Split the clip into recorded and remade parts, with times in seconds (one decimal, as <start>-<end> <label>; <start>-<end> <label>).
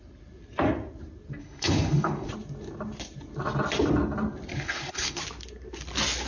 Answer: 0.0-1.4 recorded; 1.4-2.3 remade; 2.3-4.5 recorded; 4.5-5.2 remade; 5.2-6.3 recorded